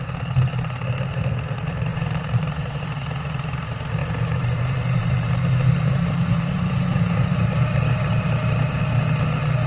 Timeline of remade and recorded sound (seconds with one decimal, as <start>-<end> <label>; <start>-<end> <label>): 0.0-1.9 recorded; 1.9-2.8 remade; 2.8-4.0 recorded; 4.0-9.0 remade; 9.0-9.7 recorded